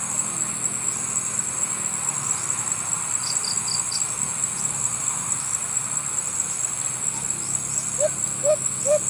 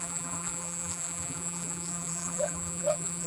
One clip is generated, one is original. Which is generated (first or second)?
second